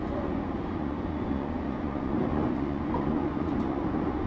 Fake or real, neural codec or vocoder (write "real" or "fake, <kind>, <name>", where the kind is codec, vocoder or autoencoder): fake, vocoder, Vocos